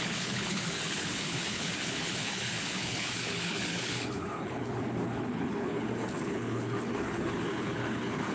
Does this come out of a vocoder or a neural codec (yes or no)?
yes